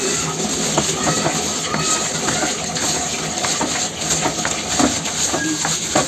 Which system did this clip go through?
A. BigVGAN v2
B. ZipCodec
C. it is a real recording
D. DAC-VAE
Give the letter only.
C